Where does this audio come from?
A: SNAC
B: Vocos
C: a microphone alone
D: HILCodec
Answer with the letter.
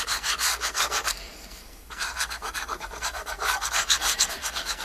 A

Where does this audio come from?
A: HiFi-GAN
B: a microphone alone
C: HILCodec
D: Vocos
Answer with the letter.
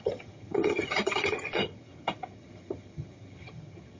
A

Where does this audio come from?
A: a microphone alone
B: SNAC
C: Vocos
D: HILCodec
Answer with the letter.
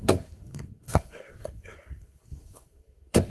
B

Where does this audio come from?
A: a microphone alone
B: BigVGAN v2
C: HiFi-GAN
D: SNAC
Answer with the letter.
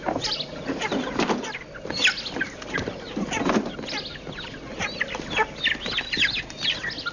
A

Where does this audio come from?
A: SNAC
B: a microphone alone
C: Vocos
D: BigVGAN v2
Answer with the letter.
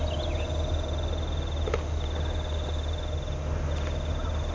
B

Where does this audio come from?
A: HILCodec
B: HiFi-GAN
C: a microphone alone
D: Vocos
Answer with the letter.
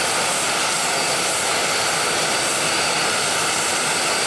C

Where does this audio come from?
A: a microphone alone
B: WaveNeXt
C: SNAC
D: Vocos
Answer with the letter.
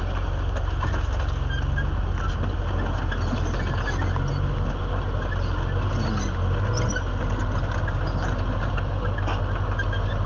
A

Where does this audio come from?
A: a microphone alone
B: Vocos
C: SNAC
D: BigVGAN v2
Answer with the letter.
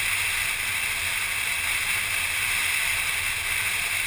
A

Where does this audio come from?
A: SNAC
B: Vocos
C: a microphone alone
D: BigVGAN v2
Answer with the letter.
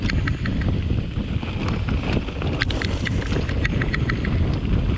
C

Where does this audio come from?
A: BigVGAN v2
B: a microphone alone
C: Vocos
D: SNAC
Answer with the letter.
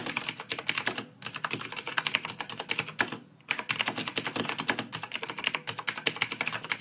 B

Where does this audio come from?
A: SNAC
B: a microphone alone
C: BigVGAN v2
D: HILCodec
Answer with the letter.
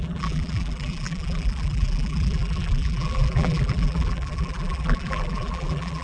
C